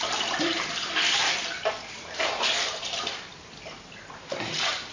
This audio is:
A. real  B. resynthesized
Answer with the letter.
A